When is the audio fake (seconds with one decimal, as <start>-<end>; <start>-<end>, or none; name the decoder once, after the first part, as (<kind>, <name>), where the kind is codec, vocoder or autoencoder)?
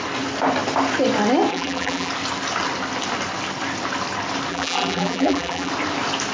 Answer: 1.5-2.1 (vocoder, BigVGAN v2); 4.5-5.7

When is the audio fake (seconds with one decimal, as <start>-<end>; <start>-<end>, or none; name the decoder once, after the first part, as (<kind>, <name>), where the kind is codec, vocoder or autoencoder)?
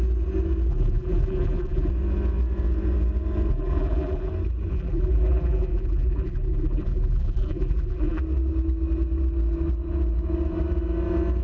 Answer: 0.7-1.9 (vocoder, BigVGAN v2); 3.5-4.3; 4.7-8.2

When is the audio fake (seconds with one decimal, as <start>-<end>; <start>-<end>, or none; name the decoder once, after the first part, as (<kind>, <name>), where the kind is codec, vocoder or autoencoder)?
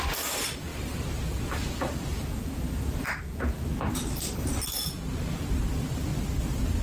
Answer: 0.0-6.8 (vocoder, BigVGAN v2)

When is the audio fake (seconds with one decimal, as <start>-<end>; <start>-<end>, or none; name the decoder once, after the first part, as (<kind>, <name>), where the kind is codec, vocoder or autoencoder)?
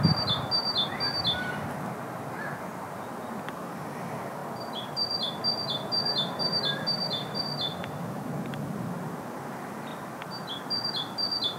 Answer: none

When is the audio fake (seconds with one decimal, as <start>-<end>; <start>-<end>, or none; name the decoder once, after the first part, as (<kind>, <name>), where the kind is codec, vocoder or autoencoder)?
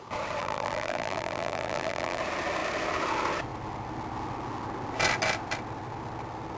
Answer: 0.4-2.2 (vocoder, BigVGAN v2)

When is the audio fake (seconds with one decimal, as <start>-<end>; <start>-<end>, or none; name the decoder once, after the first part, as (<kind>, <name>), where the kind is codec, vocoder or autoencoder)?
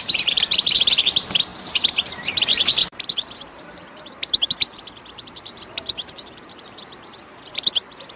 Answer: 0.0-8.2 (vocoder, BigVGAN v2)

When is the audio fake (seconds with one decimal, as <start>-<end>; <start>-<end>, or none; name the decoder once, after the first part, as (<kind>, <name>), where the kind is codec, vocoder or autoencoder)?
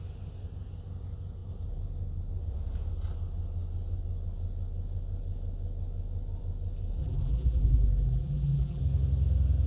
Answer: 7.0-8.8 (vocoder, BigVGAN v2)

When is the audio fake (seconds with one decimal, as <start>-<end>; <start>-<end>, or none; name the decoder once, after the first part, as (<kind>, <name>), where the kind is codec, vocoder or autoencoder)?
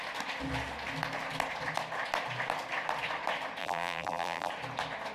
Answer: 3.6-4.5 (vocoder, BigVGAN v2)